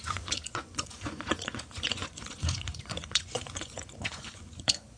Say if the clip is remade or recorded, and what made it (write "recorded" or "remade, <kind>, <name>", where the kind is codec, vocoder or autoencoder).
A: remade, vocoder, Vocos